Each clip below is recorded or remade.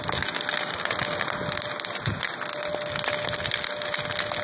recorded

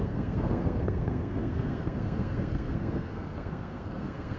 remade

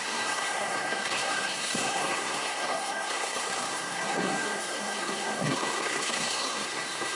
remade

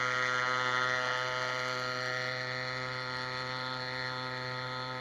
recorded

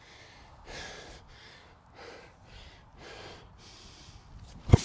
recorded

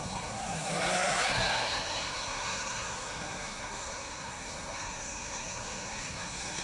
remade